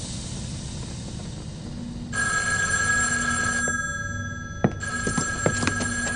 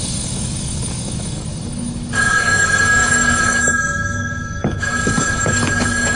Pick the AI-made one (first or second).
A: second